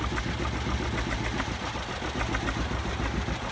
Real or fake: real